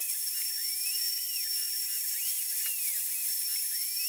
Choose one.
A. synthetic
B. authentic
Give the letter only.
A